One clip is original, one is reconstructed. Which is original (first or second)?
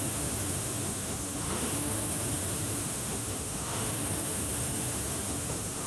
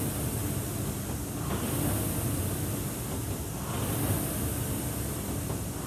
second